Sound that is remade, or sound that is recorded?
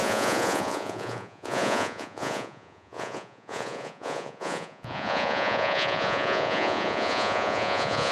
remade